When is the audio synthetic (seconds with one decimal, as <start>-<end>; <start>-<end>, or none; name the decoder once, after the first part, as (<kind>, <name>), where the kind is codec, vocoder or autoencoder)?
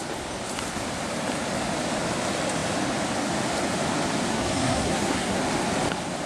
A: 4.3-5.4 (codec, SNAC)